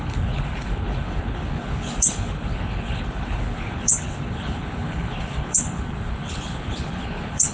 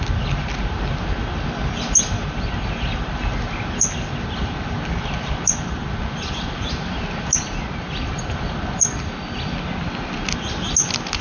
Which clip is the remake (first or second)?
first